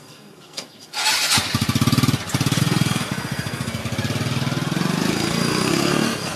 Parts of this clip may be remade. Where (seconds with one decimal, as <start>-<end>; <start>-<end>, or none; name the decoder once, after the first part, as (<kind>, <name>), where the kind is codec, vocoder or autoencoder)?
0.0-1.0 (codec, SNAC); 2.6-3.8; 5.1-6.4

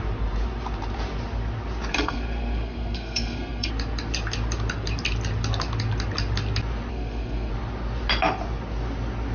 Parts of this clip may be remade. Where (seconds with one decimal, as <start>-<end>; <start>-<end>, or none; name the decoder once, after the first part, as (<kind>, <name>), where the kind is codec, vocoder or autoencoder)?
1.9-3.7 (codec, SNAC); 6.9-7.5